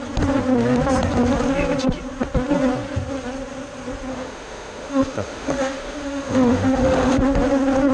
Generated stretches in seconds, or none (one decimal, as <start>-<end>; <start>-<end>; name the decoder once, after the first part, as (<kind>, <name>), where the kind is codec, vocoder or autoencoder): 4.1-7.2 (autoencoder, DAC-VAE)